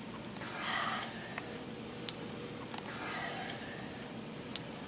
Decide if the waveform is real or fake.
real